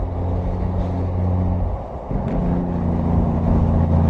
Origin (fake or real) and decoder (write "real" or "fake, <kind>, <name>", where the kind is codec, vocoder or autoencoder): real